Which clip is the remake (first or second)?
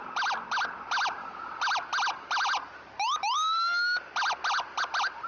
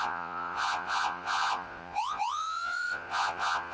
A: second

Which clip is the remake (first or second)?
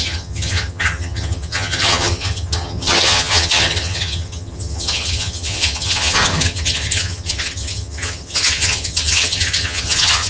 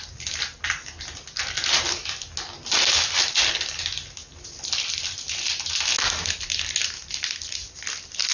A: first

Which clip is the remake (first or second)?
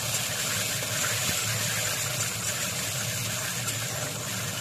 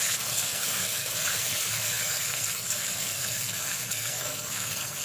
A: second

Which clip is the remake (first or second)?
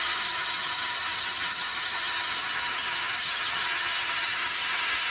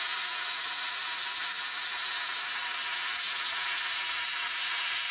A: first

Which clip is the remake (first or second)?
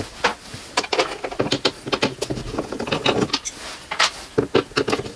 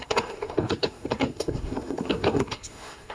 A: second